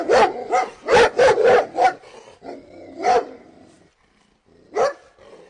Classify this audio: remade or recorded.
recorded